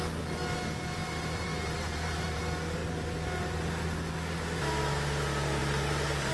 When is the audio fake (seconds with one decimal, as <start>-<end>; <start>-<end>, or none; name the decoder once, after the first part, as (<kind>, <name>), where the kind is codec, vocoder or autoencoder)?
1.0-2.4 (vocoder, BigVGAN v2); 2.8-3.7; 5.6-6.3